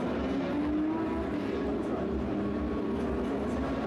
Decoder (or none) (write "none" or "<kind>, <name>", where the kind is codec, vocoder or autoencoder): none